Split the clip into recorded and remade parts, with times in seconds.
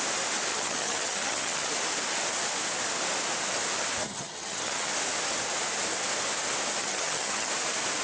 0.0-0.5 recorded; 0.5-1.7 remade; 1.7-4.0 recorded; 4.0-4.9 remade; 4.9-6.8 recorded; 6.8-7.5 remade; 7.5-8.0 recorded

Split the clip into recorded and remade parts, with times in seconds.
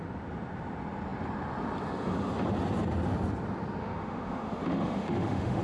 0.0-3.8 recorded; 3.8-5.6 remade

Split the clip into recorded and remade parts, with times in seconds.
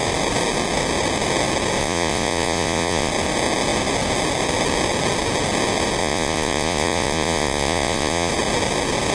0.0-1.8 recorded; 1.8-3.1 remade; 3.1-6.0 recorded; 6.0-8.3 remade; 8.3-9.1 recorded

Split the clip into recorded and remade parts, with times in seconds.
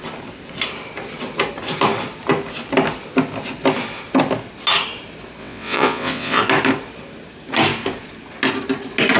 0.0-5.4 recorded; 5.4-6.4 remade; 6.4-9.2 recorded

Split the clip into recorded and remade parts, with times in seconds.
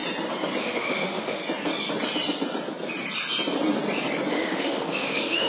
0.0-0.6 recorded; 0.6-1.4 remade; 1.4-4.3 recorded; 4.3-5.5 remade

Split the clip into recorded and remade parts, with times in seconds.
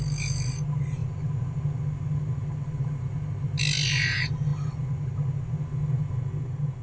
0.0-6.8 recorded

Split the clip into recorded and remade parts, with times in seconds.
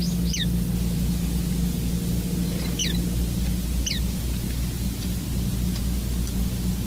0.0-6.9 recorded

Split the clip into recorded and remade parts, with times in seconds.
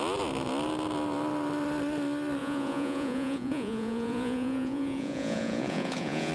0.0-2.4 recorded; 2.4-6.3 remade